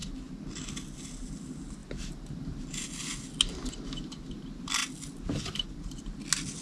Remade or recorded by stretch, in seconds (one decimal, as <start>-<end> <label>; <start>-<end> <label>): 0.0-6.6 recorded